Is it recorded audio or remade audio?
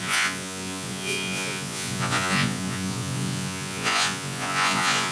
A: remade